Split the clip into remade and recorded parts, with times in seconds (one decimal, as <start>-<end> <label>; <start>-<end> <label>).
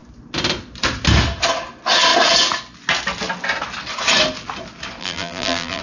0.0-5.0 recorded; 5.0-5.8 remade